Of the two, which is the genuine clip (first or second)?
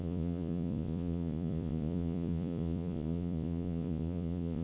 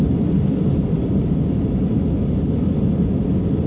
second